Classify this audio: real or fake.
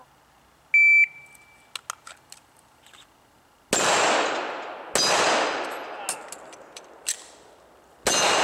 real